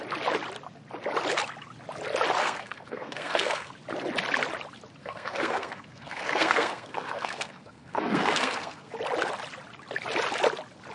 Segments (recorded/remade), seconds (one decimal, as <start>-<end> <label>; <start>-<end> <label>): 0.0-2.4 recorded; 2.4-3.7 remade; 3.7-5.0 recorded; 5.0-8.9 remade; 8.9-10.9 recorded